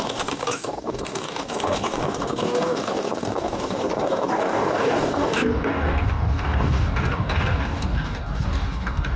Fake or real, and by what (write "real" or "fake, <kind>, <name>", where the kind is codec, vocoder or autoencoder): fake, codec, DAC